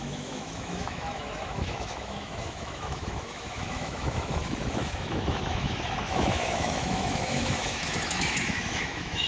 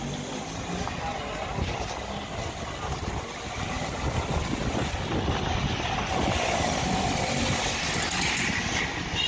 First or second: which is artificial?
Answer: first